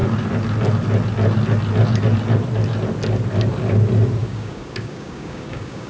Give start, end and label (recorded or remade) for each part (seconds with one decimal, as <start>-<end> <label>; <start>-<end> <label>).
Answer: 0.0-4.2 recorded; 4.2-5.9 remade